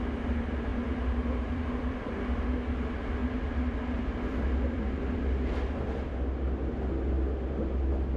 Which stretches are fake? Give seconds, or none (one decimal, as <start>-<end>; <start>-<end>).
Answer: 0.7-2.2; 3.2-5.7